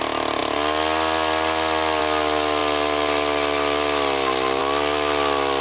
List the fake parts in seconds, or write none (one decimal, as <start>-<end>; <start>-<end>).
none